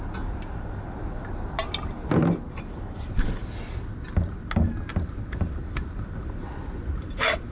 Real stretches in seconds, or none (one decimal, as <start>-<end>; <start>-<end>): 0.0-7.5